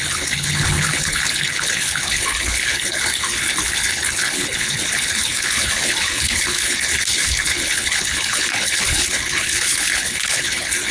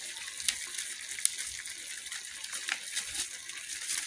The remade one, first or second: first